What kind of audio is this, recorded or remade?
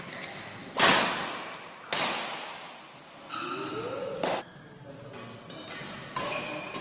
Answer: recorded